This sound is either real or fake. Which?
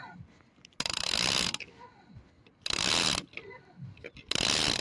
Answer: real